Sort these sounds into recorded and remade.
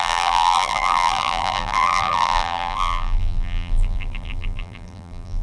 remade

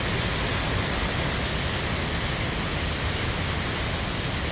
recorded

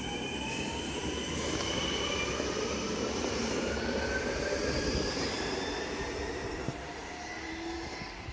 remade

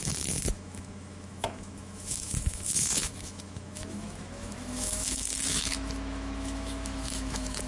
remade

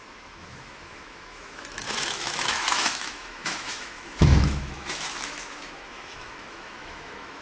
remade